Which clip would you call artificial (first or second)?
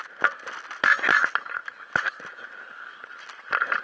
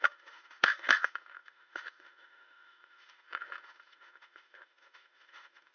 second